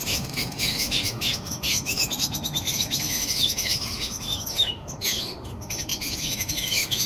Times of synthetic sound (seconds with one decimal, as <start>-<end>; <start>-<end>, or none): 0.0-7.1